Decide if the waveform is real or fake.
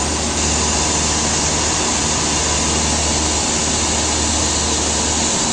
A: real